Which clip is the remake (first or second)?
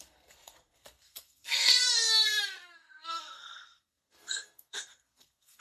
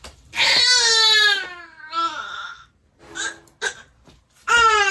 first